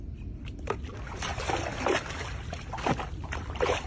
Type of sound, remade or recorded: recorded